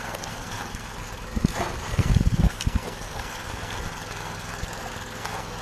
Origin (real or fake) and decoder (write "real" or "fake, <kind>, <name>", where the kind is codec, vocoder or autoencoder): fake, codec, SNAC